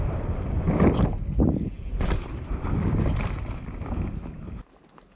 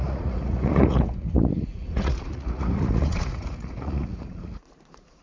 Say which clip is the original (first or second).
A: first